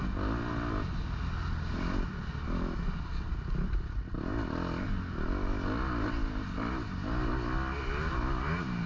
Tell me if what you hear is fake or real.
real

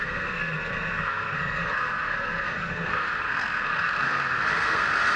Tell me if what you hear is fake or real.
fake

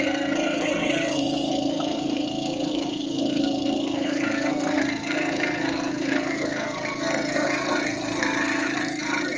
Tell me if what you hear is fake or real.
fake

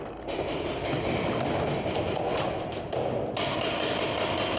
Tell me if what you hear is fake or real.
real